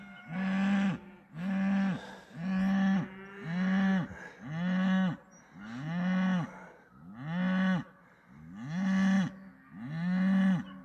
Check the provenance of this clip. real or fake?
real